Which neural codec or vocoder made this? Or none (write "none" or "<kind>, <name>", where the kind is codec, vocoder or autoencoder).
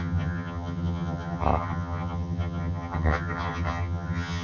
vocoder, HiFi-GAN